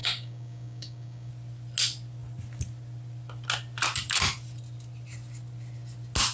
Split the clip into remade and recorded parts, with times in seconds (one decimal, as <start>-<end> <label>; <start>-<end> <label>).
0.0-1.3 remade; 1.3-6.3 recorded